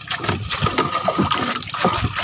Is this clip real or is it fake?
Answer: real